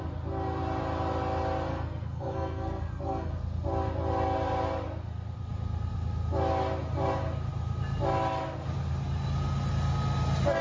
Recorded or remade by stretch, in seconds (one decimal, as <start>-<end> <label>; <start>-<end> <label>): 0.0-1.7 recorded; 1.7-3.3 remade; 3.3-10.6 recorded